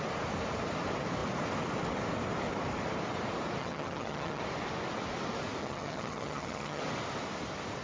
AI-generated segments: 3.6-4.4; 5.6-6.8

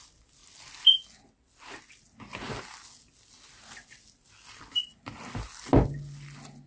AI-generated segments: none